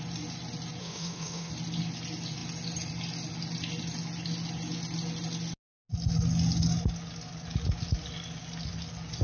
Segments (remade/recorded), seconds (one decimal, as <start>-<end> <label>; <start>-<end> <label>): 0.0-0.8 recorded; 0.8-1.5 remade; 1.5-9.2 recorded